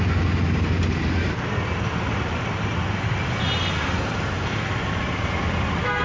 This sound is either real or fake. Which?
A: real